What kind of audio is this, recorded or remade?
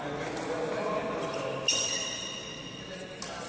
recorded